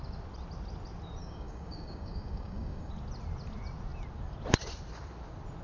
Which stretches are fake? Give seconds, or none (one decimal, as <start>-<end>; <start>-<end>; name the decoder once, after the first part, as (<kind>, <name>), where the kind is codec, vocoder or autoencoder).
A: 1.2-2.9 (codec, DAC)